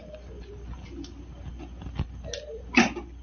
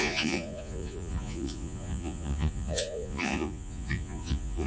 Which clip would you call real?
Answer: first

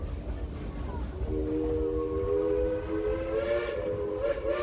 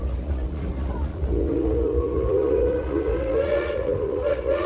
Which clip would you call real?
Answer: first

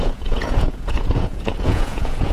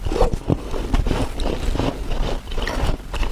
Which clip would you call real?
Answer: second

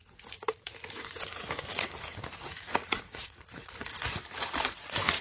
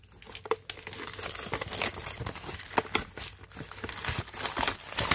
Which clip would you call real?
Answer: second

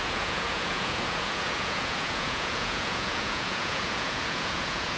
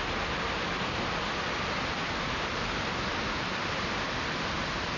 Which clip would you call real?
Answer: second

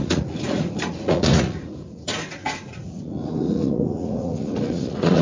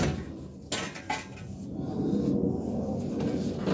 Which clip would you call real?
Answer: second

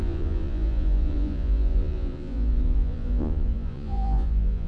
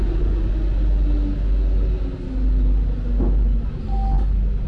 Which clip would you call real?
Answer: second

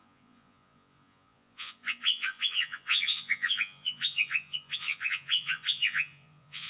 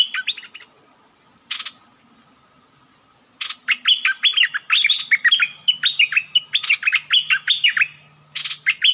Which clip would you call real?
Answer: second